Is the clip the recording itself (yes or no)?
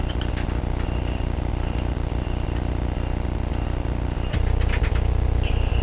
yes